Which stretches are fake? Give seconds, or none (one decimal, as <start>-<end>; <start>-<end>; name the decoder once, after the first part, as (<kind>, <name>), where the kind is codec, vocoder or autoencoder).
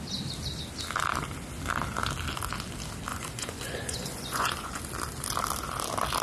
3.1-4.8 (vocoder, Vocos)